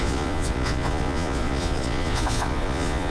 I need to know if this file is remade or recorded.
remade